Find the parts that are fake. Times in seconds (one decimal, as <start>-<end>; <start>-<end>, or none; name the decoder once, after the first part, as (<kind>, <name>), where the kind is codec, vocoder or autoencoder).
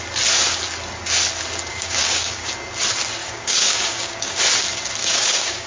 1.7-2.5 (codec, DAC); 3.2-4.4; 5.0-5.7